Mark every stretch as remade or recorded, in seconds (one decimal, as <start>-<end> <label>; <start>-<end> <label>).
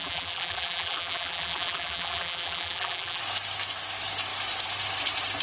0.0-3.2 remade; 3.2-5.4 recorded